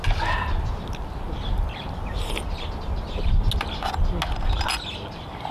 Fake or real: real